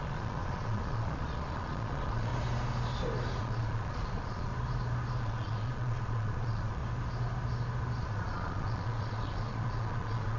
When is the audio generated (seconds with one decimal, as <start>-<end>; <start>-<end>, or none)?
0.0-2.3; 3.4-4.5; 5.2-6.8; 8.0-10.4